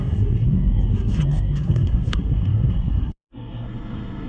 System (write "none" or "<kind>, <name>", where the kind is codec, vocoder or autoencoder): codec, SNAC